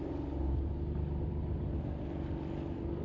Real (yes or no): yes